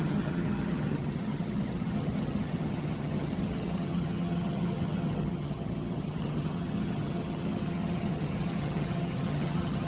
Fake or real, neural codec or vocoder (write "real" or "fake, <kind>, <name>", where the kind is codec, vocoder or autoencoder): fake, vocoder, HiFi-GAN